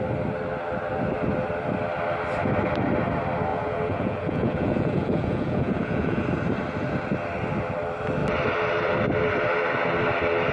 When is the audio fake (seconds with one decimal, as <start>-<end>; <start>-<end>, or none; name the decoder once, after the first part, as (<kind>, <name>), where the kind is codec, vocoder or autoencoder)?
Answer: 3.5-6.2 (vocoder, Vocos)